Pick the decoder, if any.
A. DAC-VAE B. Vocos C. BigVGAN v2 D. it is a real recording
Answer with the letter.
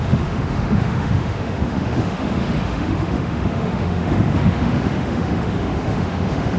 A